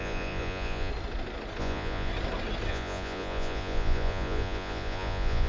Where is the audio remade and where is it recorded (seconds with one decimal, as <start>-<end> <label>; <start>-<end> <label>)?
0.0-0.9 remade; 0.9-1.6 recorded; 1.6-2.1 remade; 2.1-2.7 recorded; 2.7-5.5 remade